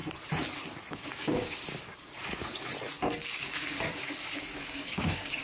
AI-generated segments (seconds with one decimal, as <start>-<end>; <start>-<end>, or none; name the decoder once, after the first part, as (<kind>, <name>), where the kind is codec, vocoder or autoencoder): 0.9-2.7 (codec, DAC); 3.3-5.4